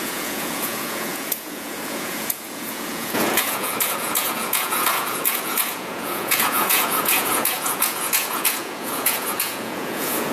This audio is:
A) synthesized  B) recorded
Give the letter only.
A